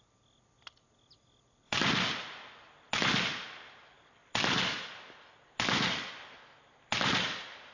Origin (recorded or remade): recorded